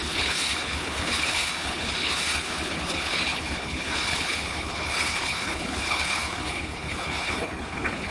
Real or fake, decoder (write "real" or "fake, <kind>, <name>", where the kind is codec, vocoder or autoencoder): fake, codec, HILCodec